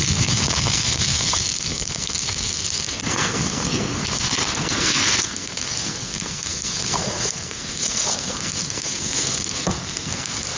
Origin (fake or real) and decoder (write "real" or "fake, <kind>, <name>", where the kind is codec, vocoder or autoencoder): fake, codec, SNAC